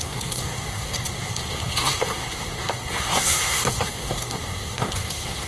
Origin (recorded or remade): remade